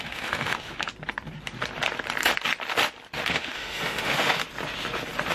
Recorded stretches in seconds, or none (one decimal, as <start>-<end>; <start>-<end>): 0.9-3.3; 4.4-5.3